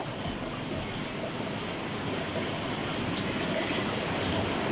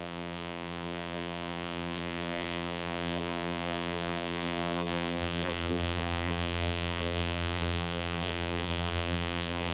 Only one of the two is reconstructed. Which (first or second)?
second